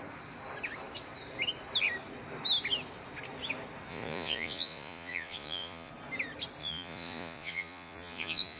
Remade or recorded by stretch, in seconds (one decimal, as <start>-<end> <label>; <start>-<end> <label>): 0.0-3.9 recorded; 3.9-5.9 remade; 5.9-6.6 recorded; 6.6-8.6 remade